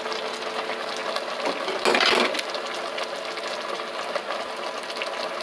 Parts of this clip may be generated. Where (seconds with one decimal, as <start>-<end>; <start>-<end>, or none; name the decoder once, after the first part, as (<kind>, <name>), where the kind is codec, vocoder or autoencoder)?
none